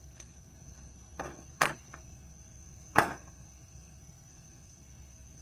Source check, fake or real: fake